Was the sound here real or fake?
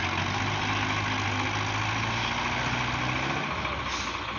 real